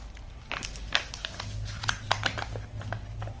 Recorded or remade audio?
recorded